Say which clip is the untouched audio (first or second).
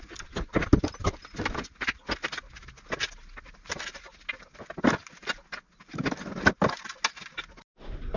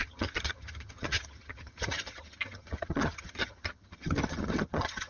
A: first